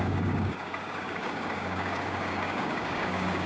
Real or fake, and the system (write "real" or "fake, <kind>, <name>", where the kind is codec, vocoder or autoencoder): fake, codec, DAC